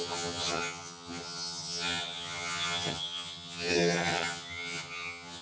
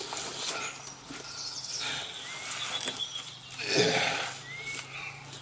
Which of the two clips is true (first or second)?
second